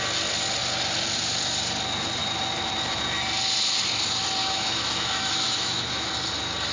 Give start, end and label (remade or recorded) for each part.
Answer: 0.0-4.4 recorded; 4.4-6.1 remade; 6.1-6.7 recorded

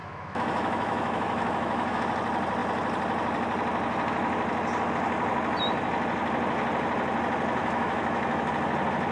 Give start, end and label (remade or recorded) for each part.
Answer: 0.0-2.0 remade; 2.0-7.6 recorded; 7.6-8.5 remade; 8.5-9.1 recorded

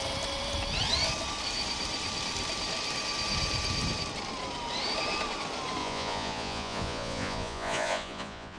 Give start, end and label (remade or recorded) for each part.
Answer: 0.0-5.8 recorded; 5.8-8.6 remade

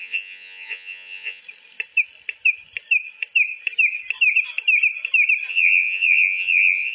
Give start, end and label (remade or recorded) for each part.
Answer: 0.0-1.4 remade; 1.4-5.5 recorded; 5.5-6.9 remade

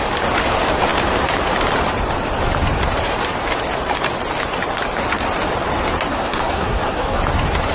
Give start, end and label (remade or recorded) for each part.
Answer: 0.0-6.1 recorded; 6.1-7.2 remade; 7.2-7.7 recorded